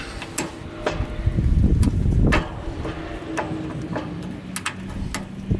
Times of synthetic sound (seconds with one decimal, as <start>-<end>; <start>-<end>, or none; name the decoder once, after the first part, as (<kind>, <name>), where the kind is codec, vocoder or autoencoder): none